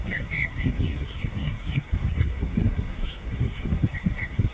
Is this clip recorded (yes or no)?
no